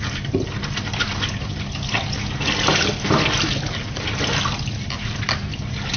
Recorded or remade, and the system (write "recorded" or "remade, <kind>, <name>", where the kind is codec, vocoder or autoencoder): recorded